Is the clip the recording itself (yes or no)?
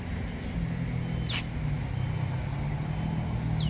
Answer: yes